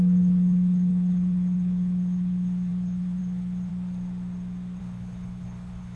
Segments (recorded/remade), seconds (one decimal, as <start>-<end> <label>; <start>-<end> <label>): 0.0-3.7 remade; 3.7-4.8 recorded; 4.8-6.0 remade